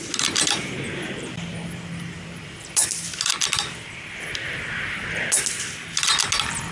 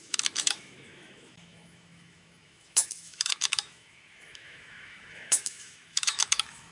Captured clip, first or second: first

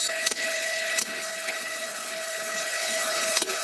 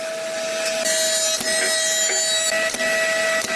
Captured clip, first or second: second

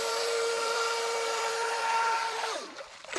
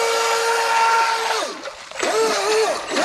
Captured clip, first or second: second